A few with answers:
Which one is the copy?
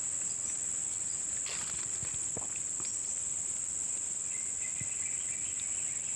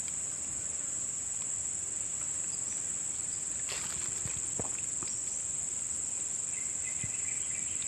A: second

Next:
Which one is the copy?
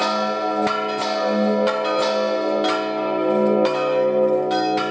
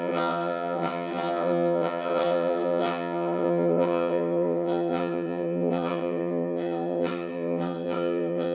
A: second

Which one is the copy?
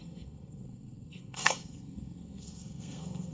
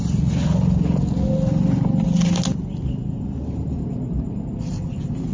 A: first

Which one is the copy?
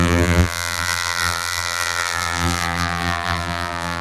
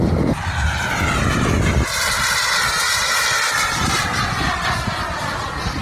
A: first